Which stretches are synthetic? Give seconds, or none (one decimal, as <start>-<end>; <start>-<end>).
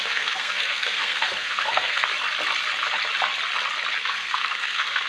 0.0-2.1; 4.0-5.1